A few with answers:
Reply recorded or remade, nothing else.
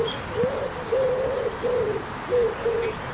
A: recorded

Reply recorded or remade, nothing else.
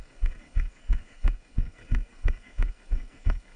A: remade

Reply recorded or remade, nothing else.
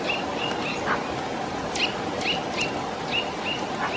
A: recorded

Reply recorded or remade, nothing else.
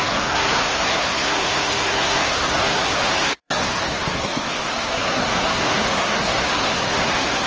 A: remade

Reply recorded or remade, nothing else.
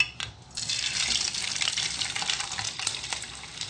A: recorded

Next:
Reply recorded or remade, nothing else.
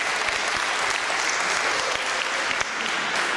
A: recorded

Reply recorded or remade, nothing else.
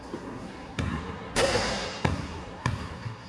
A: remade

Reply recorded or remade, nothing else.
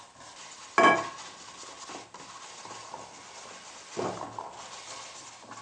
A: recorded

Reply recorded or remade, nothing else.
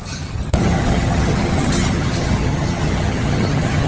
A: remade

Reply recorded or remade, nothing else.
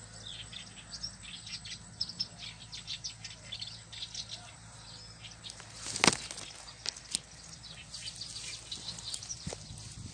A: recorded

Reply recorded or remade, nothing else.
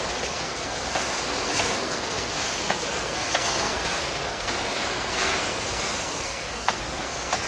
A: remade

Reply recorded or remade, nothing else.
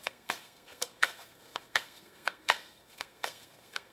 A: remade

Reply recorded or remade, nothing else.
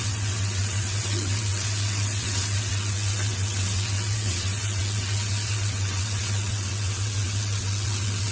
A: remade